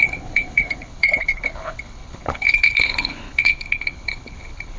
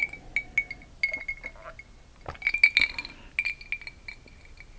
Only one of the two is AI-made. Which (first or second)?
first